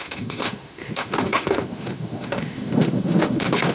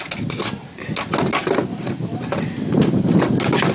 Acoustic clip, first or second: second